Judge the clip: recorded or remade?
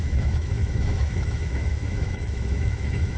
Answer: remade